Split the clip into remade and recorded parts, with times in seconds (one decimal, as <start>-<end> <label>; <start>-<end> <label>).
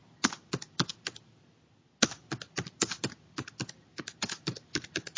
0.0-5.2 recorded